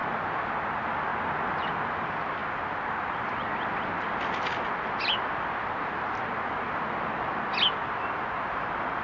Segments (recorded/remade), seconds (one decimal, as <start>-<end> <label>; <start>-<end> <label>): 0.0-0.5 remade; 0.5-9.0 recorded